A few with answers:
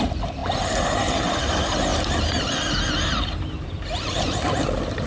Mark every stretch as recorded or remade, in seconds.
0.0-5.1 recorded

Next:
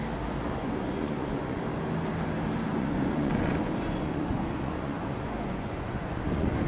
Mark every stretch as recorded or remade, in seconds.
0.0-0.6 recorded; 0.6-1.6 remade; 1.6-2.7 recorded; 2.7-6.7 remade